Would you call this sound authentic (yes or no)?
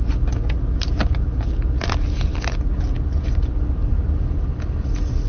yes